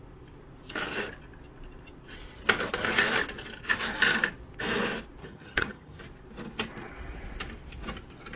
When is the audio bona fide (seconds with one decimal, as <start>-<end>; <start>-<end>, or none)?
0.0-5.2; 6.0-8.4

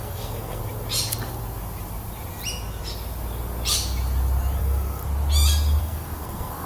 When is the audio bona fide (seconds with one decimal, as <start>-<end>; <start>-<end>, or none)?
0.6-4.6; 5.0-5.8

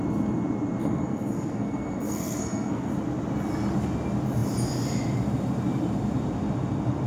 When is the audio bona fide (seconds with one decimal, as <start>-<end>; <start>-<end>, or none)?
0.0-0.8; 2.9-7.1

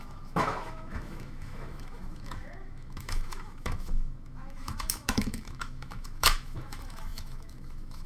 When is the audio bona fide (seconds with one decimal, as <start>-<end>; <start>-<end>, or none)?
none

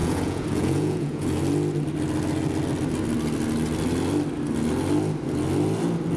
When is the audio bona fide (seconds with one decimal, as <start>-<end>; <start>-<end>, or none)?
1.4-6.2

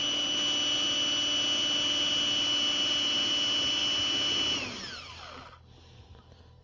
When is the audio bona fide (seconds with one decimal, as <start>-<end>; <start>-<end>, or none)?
0.0-6.6

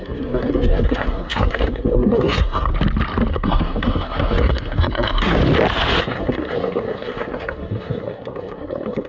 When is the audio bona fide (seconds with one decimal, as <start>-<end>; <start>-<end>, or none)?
2.7-3.3; 5.4-6.0